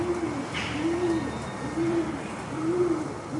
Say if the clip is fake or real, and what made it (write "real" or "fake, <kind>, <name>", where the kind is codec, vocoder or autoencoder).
real